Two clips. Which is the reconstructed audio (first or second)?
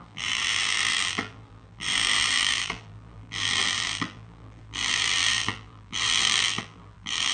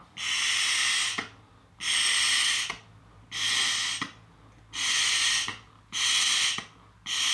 first